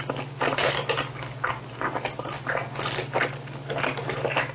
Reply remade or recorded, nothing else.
recorded